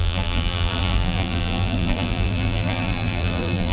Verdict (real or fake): fake